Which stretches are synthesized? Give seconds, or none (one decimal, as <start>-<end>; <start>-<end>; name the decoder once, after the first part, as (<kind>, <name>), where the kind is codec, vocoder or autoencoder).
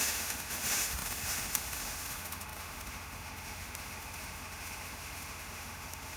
0.0-6.2 (autoencoder, DAC-VAE)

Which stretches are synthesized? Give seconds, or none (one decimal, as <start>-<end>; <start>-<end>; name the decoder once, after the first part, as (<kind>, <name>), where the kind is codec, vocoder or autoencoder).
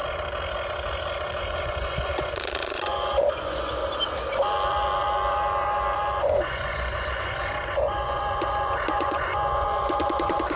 1.4-3.8 (vocoder, Vocos); 6.2-10.6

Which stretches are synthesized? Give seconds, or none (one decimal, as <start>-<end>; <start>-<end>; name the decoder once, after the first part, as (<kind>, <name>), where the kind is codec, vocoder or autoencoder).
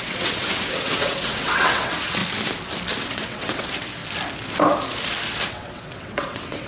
0.0-2.2 (vocoder, WaveNeXt); 3.0-4.0; 5.5-6.7